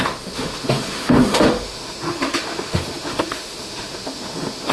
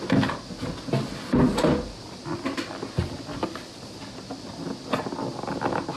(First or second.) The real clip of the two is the second